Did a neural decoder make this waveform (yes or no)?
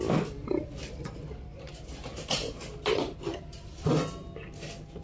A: no